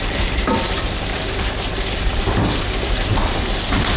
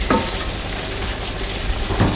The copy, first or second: first